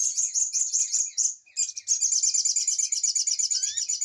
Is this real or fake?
real